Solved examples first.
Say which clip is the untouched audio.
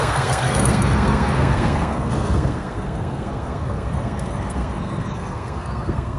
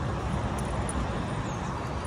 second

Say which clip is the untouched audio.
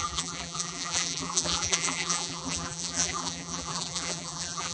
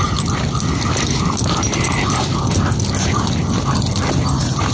second